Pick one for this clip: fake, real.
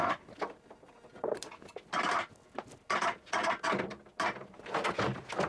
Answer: real